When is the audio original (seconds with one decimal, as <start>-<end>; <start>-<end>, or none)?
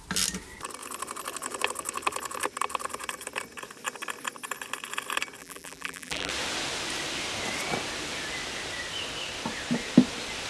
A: 0.0-5.4; 6.3-10.5